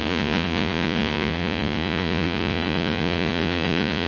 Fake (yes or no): yes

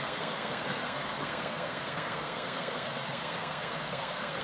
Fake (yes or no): yes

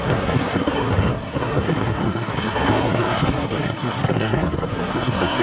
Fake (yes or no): yes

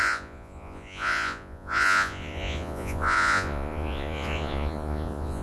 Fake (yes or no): yes